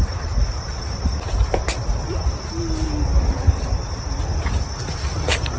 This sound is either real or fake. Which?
real